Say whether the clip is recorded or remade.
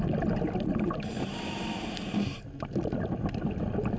recorded